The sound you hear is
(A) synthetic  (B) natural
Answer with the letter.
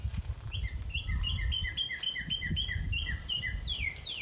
A